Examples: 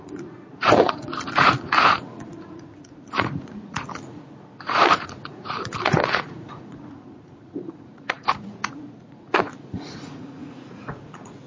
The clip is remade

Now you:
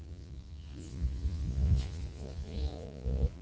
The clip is remade